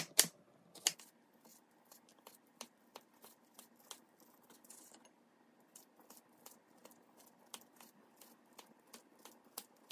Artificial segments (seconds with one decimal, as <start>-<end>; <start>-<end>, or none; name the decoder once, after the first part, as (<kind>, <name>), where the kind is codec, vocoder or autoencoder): none